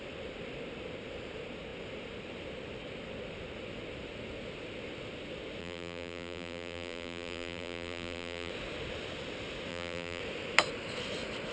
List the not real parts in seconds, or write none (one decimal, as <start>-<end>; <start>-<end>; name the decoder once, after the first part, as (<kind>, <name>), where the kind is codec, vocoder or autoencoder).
5.6-8.5 (vocoder, BigVGAN v2); 9.7-10.2